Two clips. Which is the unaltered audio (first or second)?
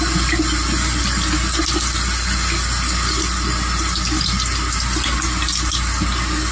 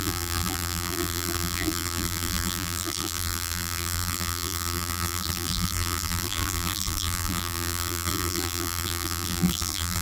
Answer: first